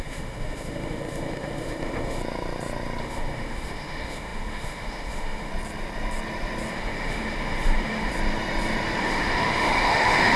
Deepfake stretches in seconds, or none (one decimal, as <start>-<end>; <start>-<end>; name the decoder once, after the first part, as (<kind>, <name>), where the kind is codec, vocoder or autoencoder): 0.0-2.2 (autoencoder, DAC-VAE); 3.0-5.5; 6.7-8.1; 9.0-10.4